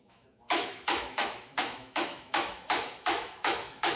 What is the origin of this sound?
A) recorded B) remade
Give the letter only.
B